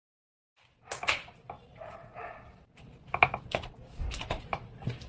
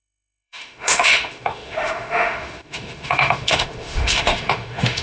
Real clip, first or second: first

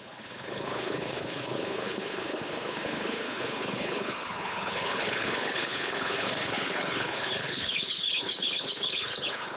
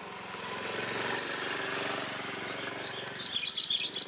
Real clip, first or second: second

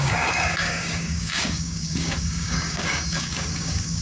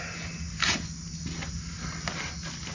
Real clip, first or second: second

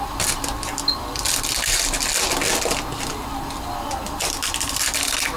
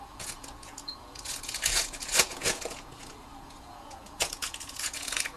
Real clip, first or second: first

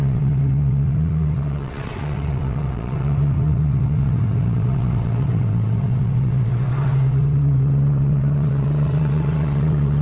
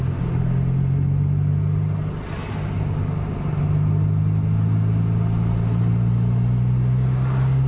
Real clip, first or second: second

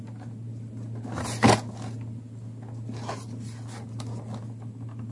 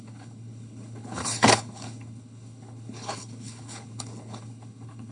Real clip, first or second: first